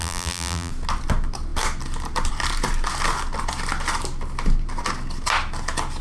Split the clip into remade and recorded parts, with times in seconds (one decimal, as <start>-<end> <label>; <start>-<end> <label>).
0.0-0.7 remade; 0.7-6.0 recorded

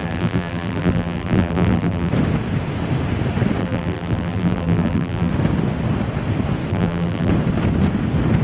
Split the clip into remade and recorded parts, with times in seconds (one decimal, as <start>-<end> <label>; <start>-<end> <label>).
0.0-2.1 remade; 2.1-3.6 recorded; 3.6-5.3 remade; 5.3-6.7 recorded; 6.7-7.3 remade; 7.3-8.4 recorded